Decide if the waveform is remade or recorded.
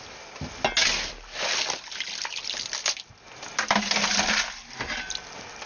recorded